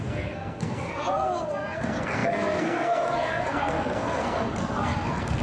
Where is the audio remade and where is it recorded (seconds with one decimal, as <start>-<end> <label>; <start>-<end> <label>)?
0.0-5.4 remade